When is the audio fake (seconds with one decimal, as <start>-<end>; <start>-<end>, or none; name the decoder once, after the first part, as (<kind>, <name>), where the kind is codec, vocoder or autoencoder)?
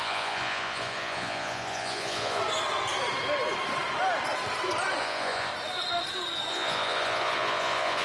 0.0-2.4 (vocoder, Vocos); 5.0-5.5; 6.5-8.0